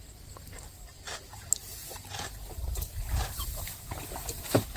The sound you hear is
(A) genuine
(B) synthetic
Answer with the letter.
B